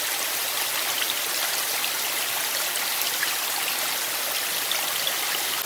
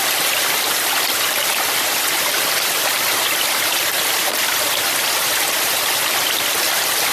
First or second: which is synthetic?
second